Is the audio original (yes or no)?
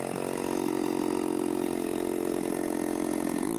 yes